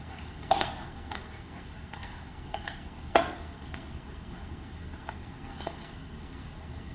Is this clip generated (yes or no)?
yes